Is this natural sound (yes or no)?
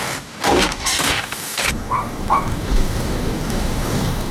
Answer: no